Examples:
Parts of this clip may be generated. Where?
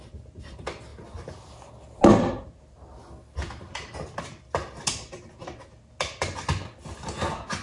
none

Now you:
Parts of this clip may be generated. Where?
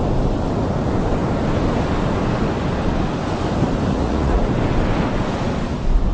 3.9-4.4 (vocoder, Vocos)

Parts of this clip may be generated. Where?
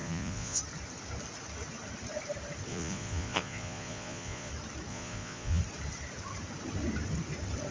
0.0-0.6 (vocoder, Vocos); 2.7-4.5; 4.9-5.6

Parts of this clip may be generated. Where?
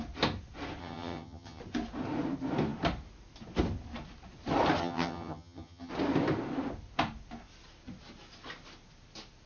0.8-1.6 (vocoder, HiFi-GAN); 4.8-5.9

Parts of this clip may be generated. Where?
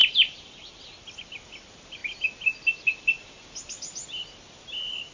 none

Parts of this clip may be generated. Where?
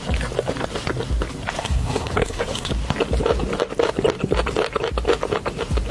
1.6-2.7 (codec, SNAC)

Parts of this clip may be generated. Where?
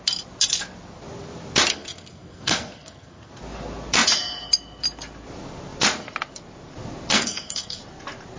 1.7-3.3 (codec, SNAC); 7.1-7.8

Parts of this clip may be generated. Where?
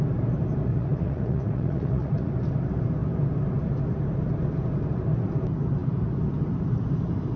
0.7-2.3 (vocoder, Vocos)